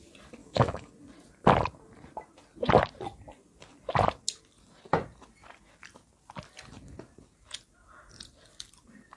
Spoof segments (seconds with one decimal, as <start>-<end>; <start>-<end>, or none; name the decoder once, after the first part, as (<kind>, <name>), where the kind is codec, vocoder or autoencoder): 0.4-0.9 (autoencoder, DAC-VAE)